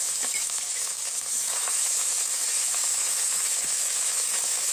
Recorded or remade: remade